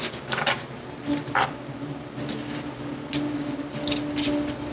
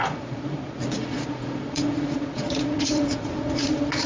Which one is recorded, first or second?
first